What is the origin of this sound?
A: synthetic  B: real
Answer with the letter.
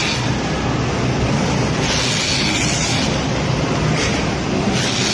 B